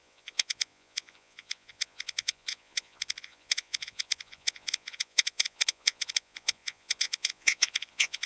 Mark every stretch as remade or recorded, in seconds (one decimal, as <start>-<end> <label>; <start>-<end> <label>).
0.0-8.3 remade